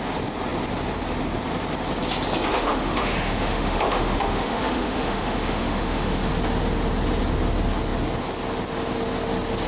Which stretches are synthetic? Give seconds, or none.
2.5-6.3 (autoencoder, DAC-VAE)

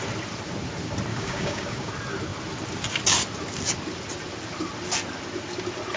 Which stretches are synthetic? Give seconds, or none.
1.1-1.9 (codec, DAC)

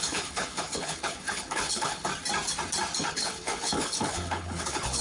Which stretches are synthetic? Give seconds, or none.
0.0-2.1 (codec, HILCodec); 3.1-5.0

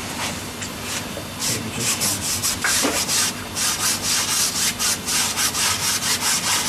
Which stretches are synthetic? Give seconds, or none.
1.4-2.0 (vocoder, BigVGAN v2); 2.4-3.3

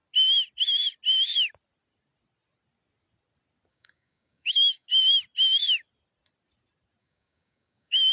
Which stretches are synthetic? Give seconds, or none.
3.7-5.0 (codec, DAC); 7.0-8.1

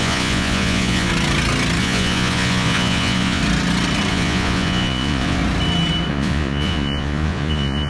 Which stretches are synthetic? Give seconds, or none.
0.0-1.1 (vocoder, Vocos); 1.8-3.4; 4.1-5.4; 6.1-7.9

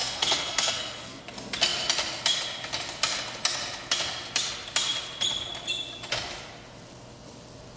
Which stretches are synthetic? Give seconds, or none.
0.0-1.2 (codec, SNAC)

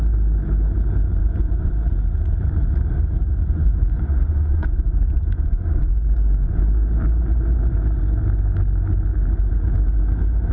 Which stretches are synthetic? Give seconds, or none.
1.2-1.9 (vocoder, Vocos); 3.4-6.6